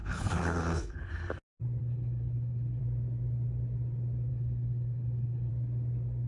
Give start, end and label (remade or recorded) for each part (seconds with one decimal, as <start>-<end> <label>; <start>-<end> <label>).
0.0-1.1 remade; 1.1-1.8 recorded; 1.8-2.8 remade; 2.8-4.3 recorded; 4.3-5.5 remade; 5.5-6.3 recorded